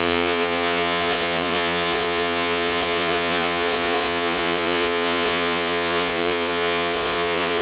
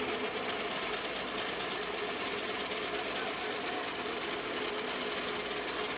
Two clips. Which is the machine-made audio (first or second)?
first